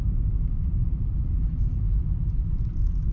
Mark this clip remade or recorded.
remade